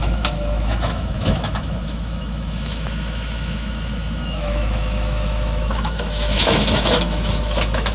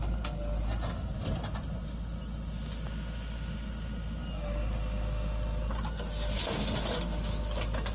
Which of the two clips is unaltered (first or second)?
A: second